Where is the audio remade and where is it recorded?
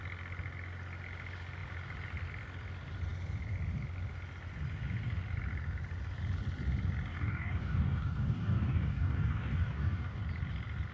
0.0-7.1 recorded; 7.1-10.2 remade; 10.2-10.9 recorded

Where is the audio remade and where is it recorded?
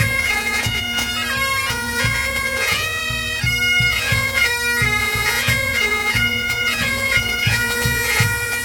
0.0-1.1 remade; 1.1-1.7 recorded; 1.7-3.0 remade; 3.0-3.9 recorded; 3.9-4.5 remade; 4.5-5.0 recorded; 5.0-8.6 remade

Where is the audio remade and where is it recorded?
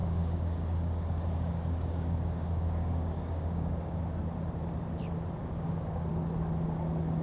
0.0-4.0 remade; 4.0-5.4 recorded; 5.4-6.1 remade; 6.1-7.2 recorded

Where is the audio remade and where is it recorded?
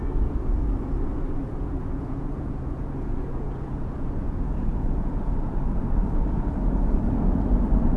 0.0-1.4 recorded; 1.4-5.8 remade; 5.8-8.0 recorded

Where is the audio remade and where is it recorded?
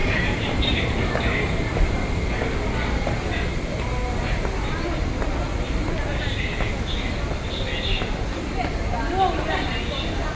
0.0-2.3 remade; 2.3-10.4 recorded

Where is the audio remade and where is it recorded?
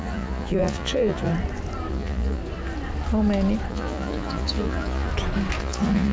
0.0-1.3 remade; 1.3-1.9 recorded; 1.9-2.4 remade; 2.4-3.7 recorded; 3.7-5.1 remade; 5.1-5.6 recorded; 5.6-6.1 remade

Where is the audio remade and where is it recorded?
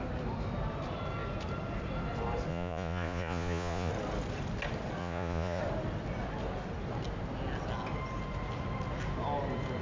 0.0-2.5 recorded; 2.5-3.9 remade; 3.9-5.0 recorded; 5.0-5.6 remade; 5.6-9.8 recorded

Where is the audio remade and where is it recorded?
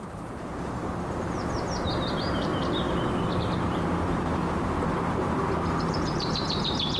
0.0-0.5 remade; 0.5-2.1 recorded; 2.1-2.5 remade; 2.5-3.6 recorded; 3.6-7.0 remade